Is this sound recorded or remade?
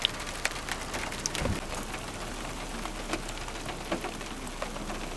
recorded